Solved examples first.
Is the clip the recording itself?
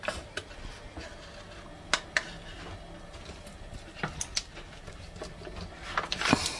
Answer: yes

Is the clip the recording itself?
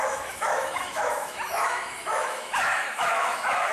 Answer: no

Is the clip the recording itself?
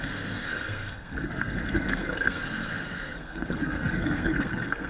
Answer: no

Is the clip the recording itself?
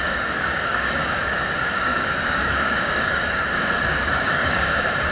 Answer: no